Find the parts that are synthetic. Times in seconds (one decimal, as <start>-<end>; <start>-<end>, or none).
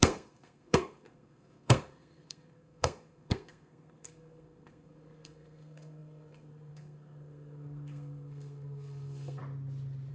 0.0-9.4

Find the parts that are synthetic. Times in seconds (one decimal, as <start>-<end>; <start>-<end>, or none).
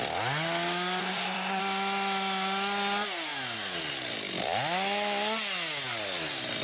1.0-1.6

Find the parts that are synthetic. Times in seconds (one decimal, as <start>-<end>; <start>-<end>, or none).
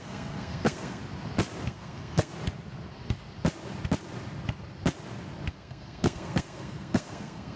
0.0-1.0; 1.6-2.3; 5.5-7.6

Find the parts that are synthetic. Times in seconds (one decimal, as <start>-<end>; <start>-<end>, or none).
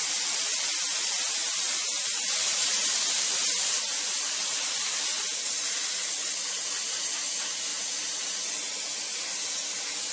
none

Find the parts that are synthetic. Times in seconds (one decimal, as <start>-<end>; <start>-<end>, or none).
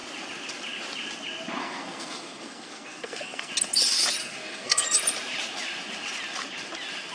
1.6-3.5; 4.2-4.8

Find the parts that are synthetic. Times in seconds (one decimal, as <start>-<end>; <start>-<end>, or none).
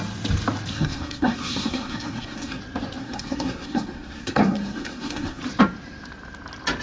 0.7-2.6; 3.0-5.4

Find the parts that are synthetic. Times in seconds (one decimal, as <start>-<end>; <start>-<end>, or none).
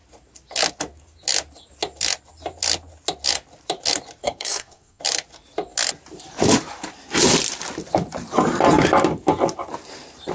4.2-5.0